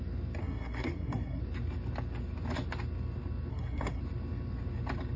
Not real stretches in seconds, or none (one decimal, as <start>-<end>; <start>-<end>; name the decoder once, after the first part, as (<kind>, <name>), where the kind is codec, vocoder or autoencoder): 0.4-1.4 (codec, SNAC); 3.5-4.0